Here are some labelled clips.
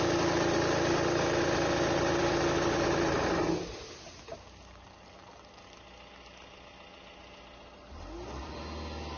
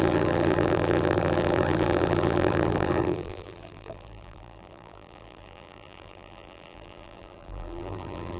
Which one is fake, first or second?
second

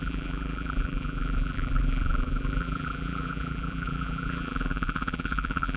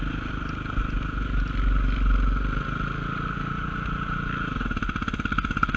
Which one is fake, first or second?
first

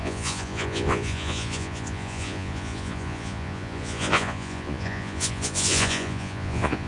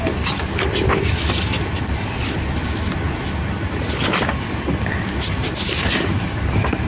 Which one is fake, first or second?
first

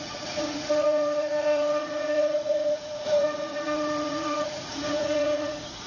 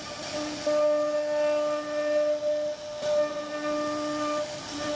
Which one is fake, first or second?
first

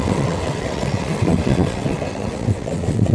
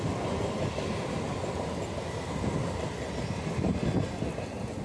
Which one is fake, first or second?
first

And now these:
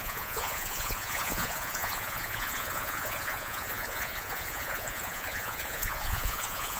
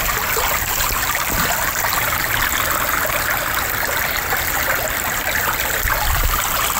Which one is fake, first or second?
first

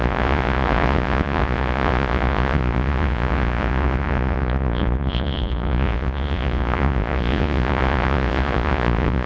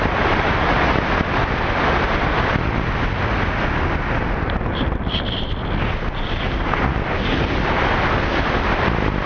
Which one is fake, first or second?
first